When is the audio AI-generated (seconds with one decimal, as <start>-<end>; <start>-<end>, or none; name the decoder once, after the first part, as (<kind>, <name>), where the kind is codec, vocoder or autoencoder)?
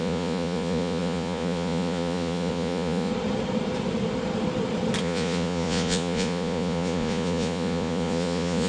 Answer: 0.0-3.1 (vocoder, Vocos); 5.0-8.7